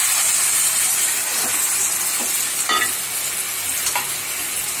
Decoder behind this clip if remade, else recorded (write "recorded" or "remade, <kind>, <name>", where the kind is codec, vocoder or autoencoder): recorded